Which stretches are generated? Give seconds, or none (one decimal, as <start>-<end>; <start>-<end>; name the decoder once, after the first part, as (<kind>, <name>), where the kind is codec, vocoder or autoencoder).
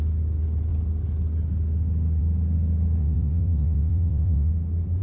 3.0-4.5 (vocoder, WaveNeXt)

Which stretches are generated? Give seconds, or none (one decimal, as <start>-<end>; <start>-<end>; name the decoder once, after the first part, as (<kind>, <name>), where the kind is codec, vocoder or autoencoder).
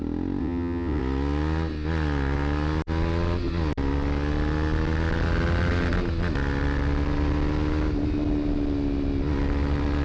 0.4-1.0 (vocoder, WaveNeXt)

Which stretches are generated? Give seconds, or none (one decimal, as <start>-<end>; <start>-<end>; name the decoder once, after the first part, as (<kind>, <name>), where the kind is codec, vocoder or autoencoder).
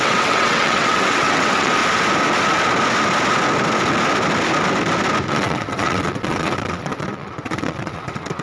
0.0-1.8 (vocoder, WaveNeXt); 5.3-8.4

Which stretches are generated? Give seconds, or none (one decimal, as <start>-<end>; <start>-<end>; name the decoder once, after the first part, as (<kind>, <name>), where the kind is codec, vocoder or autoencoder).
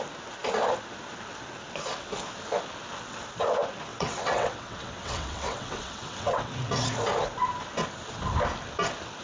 3.9-6.7 (vocoder, WaveNeXt)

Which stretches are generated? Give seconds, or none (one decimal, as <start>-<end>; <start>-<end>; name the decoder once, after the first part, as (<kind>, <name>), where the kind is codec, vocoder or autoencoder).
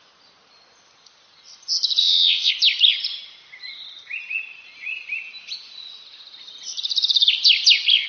2.0-2.5 (vocoder, WaveNeXt)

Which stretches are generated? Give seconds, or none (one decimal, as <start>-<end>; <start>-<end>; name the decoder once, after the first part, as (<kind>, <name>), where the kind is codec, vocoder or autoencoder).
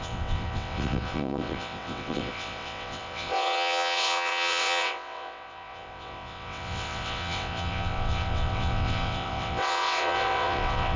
0.0-11.0 (vocoder, WaveNeXt)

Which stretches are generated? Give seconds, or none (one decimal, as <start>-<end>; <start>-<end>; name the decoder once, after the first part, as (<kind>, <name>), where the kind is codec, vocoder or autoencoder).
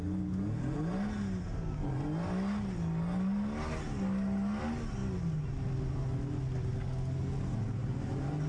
none